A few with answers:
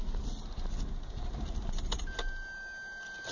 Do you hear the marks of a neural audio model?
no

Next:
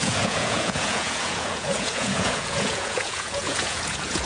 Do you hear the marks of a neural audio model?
yes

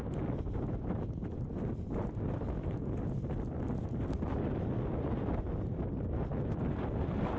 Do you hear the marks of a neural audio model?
no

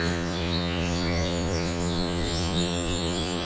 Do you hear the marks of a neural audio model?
yes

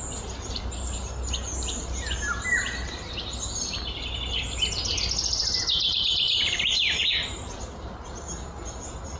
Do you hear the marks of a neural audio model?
no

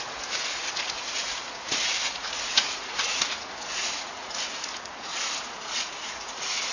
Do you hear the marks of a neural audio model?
yes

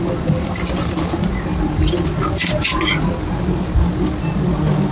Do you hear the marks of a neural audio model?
no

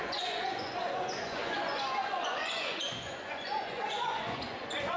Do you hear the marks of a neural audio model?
yes